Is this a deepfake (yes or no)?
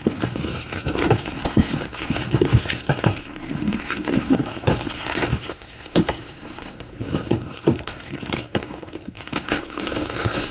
yes